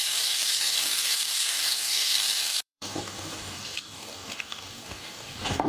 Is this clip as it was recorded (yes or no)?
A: no